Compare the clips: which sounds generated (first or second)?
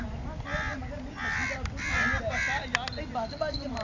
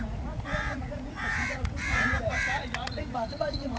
second